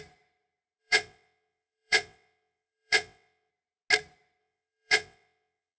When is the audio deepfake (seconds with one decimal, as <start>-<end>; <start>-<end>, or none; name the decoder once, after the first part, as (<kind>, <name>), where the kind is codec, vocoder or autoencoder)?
0.8-3.5 (vocoder, WaveNeXt); 4.4-5.8